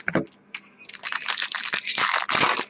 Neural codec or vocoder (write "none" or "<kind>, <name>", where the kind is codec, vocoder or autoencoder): none